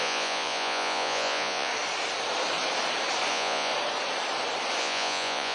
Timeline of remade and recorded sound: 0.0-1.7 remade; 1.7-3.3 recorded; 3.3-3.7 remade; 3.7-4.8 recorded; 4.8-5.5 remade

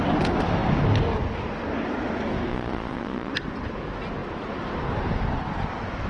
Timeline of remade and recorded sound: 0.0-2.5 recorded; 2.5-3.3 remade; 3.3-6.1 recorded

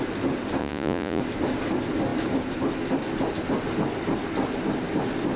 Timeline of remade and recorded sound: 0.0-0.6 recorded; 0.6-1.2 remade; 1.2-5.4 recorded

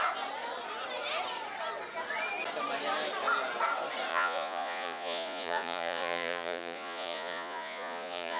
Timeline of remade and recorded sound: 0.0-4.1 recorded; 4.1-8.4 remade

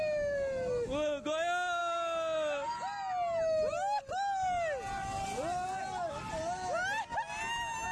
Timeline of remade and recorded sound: 0.0-7.9 recorded

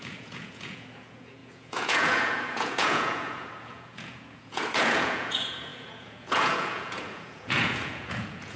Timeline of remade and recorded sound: 0.0-8.6 remade

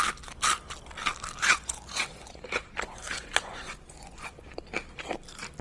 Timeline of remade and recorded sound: 0.0-1.4 recorded; 1.4-4.6 remade; 4.6-5.6 recorded